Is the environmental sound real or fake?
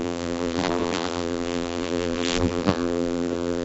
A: fake